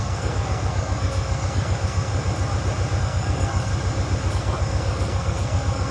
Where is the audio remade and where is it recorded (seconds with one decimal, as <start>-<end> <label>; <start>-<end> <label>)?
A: 0.0-2.1 remade; 2.1-3.0 recorded; 3.0-3.7 remade; 3.7-4.3 recorded; 4.3-5.9 remade